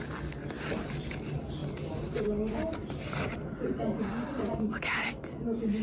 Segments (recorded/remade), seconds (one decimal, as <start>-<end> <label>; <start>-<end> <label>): 0.0-5.8 recorded